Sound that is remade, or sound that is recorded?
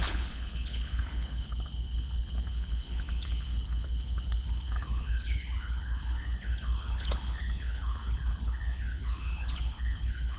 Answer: remade